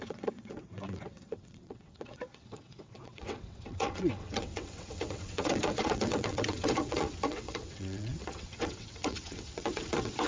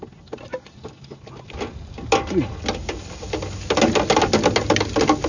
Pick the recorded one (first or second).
second